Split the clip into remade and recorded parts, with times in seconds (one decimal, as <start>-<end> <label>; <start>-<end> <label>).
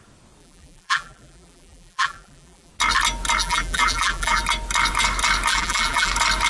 0.0-0.4 recorded; 0.4-2.7 remade; 2.7-3.4 recorded; 3.4-4.4 remade; 4.4-5.5 recorded; 5.5-6.1 remade; 6.1-6.5 recorded